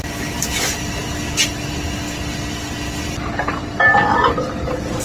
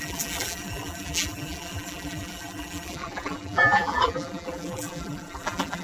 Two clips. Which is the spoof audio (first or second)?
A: second